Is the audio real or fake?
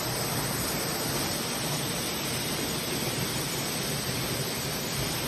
real